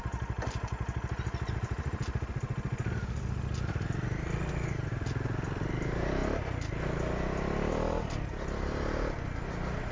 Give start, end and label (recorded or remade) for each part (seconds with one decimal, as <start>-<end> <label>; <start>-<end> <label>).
0.0-9.9 recorded